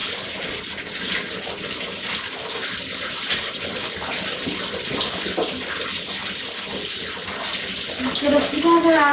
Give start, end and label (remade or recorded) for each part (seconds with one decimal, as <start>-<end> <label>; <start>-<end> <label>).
0.0-9.1 recorded